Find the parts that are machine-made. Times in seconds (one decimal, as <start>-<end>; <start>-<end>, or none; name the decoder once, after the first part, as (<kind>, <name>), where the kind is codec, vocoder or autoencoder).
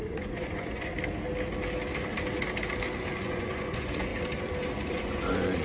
0.0-0.9 (vocoder, Vocos); 3.2-4.1; 4.9-5.6